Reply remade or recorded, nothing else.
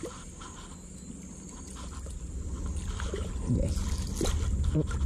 recorded